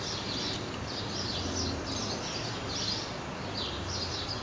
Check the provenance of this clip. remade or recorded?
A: recorded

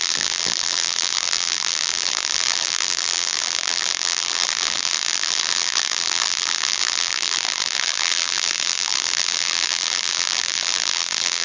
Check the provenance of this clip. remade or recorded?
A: remade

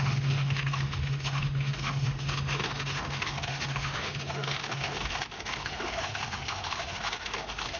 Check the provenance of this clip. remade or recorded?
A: remade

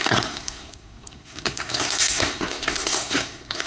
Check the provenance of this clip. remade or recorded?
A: remade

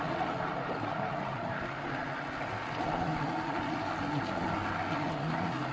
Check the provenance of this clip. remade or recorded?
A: recorded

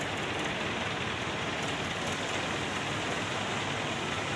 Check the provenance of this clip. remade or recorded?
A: recorded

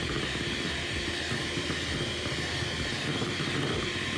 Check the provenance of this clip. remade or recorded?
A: recorded